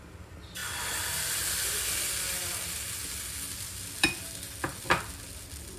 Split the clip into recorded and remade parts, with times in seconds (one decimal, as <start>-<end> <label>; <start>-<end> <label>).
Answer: 0.0-5.8 recorded